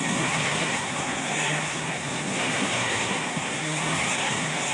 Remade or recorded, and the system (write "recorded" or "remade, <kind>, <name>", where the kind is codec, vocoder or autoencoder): remade, codec, SNAC